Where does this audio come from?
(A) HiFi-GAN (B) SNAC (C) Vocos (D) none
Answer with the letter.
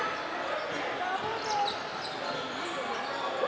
D